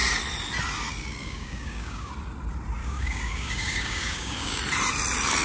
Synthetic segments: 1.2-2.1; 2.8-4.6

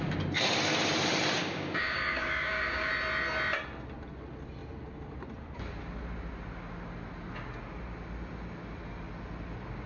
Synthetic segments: 1.4-2.9

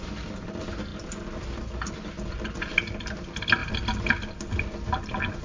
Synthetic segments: none

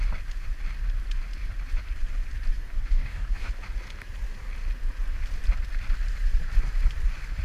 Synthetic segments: 2.5-3.5